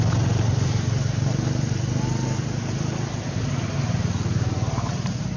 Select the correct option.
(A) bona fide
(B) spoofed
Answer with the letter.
A